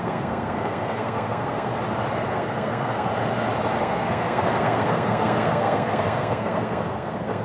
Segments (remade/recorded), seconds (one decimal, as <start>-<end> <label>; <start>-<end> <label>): 0.0-1.7 remade; 1.7-2.3 recorded; 2.3-3.1 remade; 3.1-3.8 recorded; 3.8-7.4 remade

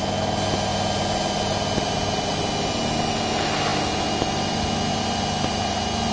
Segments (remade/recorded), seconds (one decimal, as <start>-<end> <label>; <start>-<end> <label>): 0.0-6.1 recorded

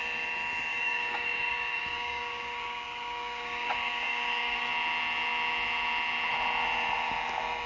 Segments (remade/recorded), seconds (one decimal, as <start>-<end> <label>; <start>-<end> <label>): 0.0-0.7 recorded; 0.7-4.7 remade; 4.7-7.7 recorded

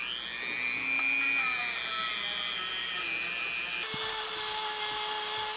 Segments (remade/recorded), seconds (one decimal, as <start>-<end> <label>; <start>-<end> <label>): 0.0-5.6 recorded

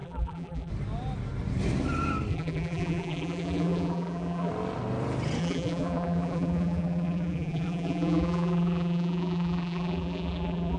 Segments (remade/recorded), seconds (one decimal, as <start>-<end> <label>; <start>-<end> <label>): 0.0-0.7 remade; 0.7-2.3 recorded; 2.3-4.5 remade; 4.5-5.4 recorded; 5.4-10.8 remade